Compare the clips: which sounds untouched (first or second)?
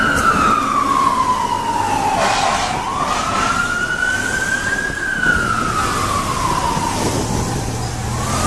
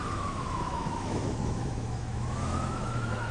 first